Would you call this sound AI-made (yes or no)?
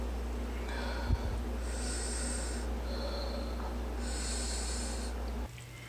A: no